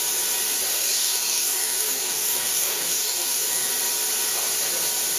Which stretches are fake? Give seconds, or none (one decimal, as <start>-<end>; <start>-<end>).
0.7-3.7